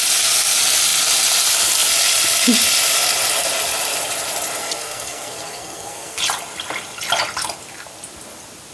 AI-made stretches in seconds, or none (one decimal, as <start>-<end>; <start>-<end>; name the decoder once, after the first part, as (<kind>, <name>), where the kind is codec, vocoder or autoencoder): 4.6-6.2 (codec, SNAC)